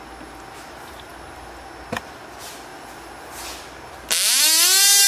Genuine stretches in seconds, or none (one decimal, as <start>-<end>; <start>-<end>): 0.0-5.1

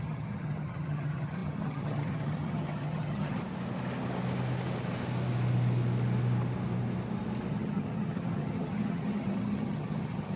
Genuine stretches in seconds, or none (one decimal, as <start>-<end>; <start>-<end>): 3.4-7.5